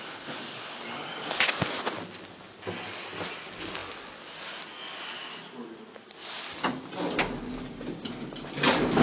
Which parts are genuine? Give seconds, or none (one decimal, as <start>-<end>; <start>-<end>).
0.0-9.0